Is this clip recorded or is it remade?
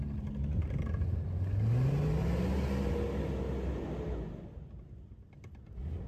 recorded